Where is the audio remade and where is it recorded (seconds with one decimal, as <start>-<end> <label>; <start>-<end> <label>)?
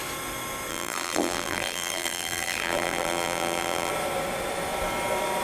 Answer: 0.0-0.7 recorded; 0.7-3.9 remade; 3.9-5.4 recorded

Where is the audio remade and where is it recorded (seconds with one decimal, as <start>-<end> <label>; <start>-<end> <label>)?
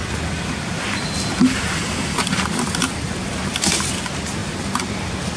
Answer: 0.0-5.4 recorded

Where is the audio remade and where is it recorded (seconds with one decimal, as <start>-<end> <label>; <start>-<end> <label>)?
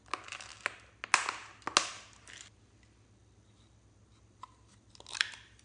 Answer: 0.0-5.6 recorded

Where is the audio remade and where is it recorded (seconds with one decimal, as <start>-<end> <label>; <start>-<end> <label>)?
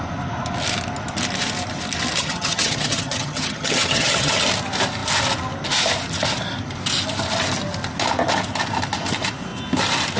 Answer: 0.0-2.2 recorded; 2.2-4.4 remade; 4.4-10.2 recorded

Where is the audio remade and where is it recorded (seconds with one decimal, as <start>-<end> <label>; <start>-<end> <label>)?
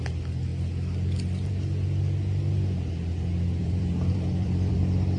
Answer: 0.0-3.6 recorded; 3.6-4.8 remade; 4.8-5.2 recorded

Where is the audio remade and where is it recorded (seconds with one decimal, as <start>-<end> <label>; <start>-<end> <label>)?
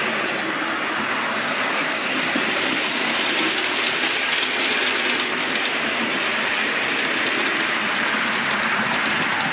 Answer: 0.0-7.5 recorded; 7.5-9.0 remade; 9.0-9.5 recorded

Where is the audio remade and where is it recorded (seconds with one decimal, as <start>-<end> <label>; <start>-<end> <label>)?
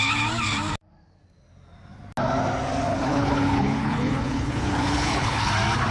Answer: 0.0-2.9 recorded; 2.9-5.5 remade; 5.5-5.9 recorded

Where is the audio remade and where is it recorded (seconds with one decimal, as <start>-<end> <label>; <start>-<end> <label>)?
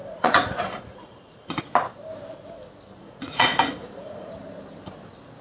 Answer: 0.0-1.6 remade; 1.6-3.0 recorded; 3.0-4.3 remade; 4.3-5.4 recorded